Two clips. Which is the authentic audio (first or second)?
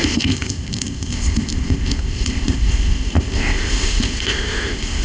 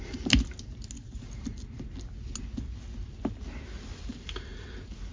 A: second